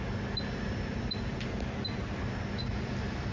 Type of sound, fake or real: real